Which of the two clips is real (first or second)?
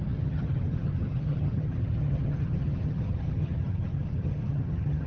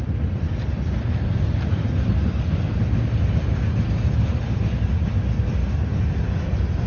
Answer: second